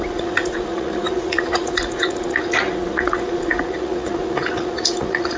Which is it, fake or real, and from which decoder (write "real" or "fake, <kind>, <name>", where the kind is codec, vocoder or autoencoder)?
fake, vocoder, Vocos